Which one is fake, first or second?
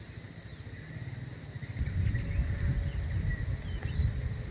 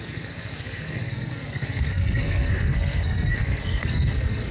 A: second